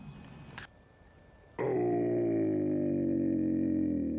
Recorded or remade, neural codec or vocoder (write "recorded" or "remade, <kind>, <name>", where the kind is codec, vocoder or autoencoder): recorded